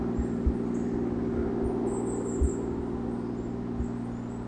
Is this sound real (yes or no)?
yes